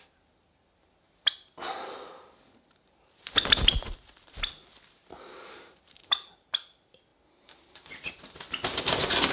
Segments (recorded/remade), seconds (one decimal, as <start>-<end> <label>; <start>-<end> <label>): 0.0-9.3 recorded